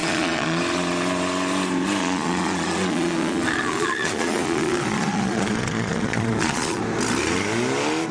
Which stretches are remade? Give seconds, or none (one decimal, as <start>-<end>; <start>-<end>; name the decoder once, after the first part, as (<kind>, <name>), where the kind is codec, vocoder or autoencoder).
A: 0.0-0.6 (vocoder, Vocos); 2.0-6.8